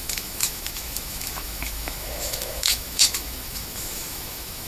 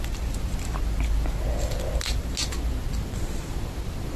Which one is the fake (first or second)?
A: first